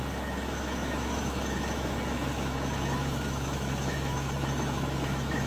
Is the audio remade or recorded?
remade